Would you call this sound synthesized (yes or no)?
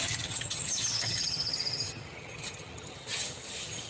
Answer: yes